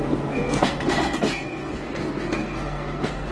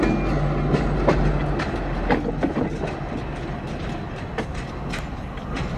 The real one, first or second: second